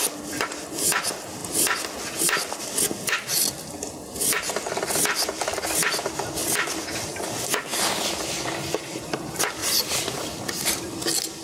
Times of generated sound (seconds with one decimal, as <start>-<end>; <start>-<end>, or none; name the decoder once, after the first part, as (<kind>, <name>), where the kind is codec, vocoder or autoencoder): 6.4-7.2 (vocoder, BigVGAN v2); 7.7-8.2; 9.6-10.8